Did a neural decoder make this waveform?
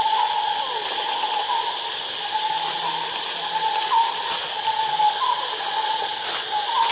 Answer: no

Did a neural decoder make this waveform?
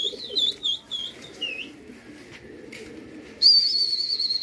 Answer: no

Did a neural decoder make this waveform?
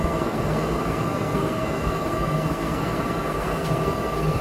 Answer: yes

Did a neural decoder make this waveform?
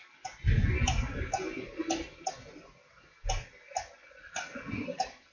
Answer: no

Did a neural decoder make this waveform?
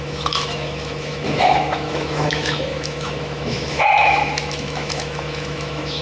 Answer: yes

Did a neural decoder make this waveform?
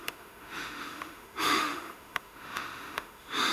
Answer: yes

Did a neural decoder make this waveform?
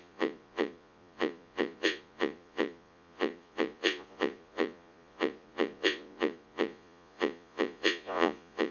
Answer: yes